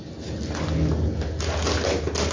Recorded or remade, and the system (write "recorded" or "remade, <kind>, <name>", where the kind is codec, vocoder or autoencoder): recorded